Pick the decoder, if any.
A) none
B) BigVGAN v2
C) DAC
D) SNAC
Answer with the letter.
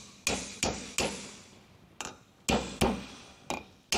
A